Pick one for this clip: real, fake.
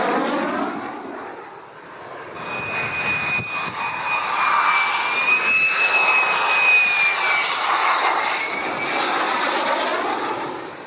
real